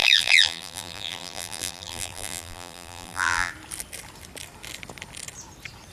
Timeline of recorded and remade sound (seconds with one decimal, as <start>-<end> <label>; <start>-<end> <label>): 0.0-3.5 remade; 3.5-5.9 recorded

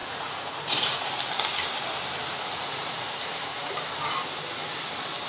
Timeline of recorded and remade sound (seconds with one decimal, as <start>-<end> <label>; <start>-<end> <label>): 0.0-1.1 remade; 1.1-2.3 recorded; 2.3-3.7 remade; 3.7-5.3 recorded

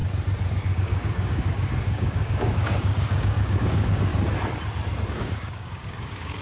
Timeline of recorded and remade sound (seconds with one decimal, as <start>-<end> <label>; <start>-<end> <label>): 0.0-0.5 recorded; 0.5-4.1 remade; 4.1-5.1 recorded; 5.1-6.4 remade